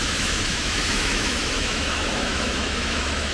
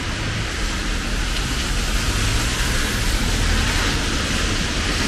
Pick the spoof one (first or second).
first